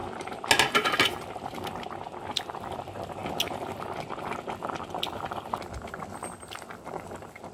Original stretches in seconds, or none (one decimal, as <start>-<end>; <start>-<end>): 0.0-7.5

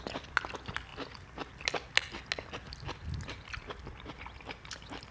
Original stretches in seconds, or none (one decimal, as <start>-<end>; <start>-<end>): 0.0-5.1

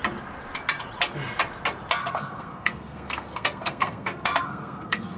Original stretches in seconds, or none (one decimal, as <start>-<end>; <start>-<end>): 0.0-2.0